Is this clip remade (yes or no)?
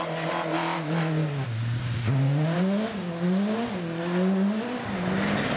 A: no